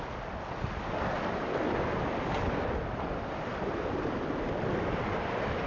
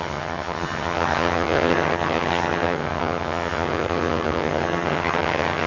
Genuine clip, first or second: first